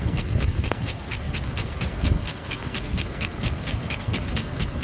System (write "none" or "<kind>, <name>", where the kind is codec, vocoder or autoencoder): codec, SNAC